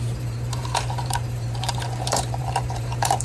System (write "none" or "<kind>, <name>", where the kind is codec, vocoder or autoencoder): vocoder, BigVGAN v2